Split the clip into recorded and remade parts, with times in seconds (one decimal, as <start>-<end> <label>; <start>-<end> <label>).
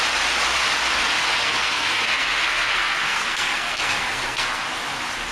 0.0-1.4 recorded; 1.4-4.6 remade; 4.6-5.3 recorded